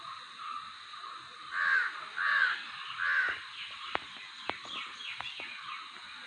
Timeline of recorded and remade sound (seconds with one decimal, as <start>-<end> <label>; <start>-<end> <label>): 0.0-6.3 recorded